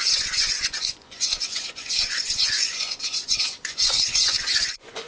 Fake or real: fake